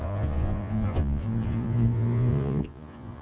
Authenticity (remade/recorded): remade